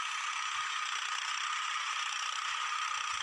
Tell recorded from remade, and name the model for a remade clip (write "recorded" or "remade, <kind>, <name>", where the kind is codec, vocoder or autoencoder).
recorded